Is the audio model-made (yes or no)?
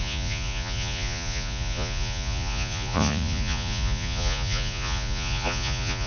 yes